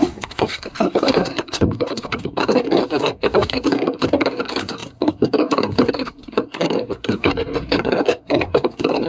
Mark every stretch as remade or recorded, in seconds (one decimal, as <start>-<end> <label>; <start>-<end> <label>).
0.0-9.1 remade